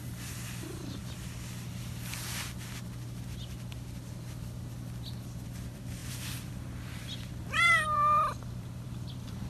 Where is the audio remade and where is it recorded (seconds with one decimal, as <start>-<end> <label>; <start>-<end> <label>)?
0.0-1.0 remade; 1.0-5.2 recorded; 5.2-9.5 remade